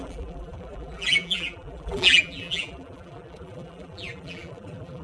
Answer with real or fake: fake